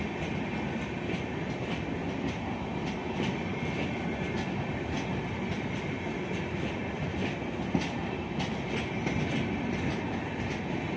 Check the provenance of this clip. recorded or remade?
recorded